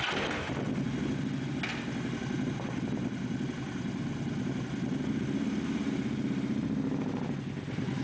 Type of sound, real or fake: real